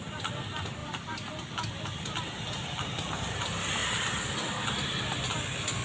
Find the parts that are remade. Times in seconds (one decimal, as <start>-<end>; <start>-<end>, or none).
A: 3.8-4.6

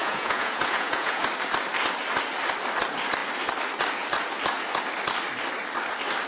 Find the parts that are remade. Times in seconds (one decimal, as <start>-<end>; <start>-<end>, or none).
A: 0.0-1.2

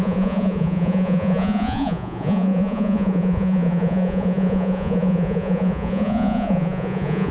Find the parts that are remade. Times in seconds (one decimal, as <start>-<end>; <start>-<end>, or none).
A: 0.0-7.3